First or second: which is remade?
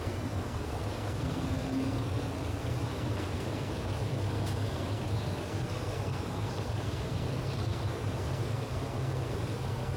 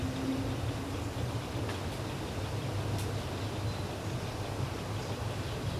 first